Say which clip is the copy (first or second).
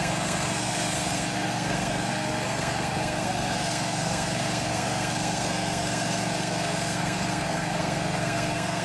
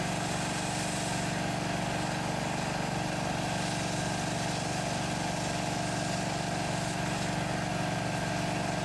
first